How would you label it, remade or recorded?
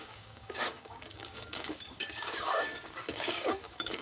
remade